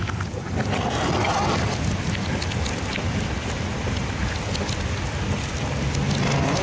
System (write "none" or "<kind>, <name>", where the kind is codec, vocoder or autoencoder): none